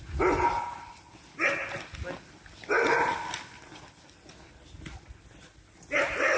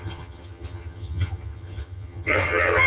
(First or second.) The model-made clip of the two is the second